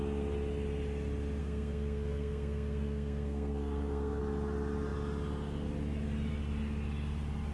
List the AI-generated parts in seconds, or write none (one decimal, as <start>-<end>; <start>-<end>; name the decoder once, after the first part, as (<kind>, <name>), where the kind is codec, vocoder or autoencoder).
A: 1.4-4.2 (codec, SNAC)